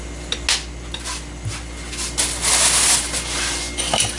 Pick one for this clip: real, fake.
real